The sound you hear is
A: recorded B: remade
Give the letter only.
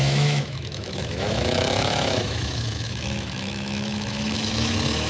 B